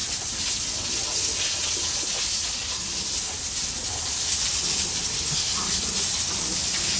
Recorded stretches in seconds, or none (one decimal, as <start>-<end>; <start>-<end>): 0.0-7.0